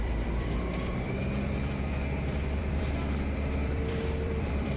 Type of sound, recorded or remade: remade